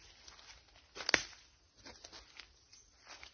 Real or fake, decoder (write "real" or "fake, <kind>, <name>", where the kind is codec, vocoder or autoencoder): real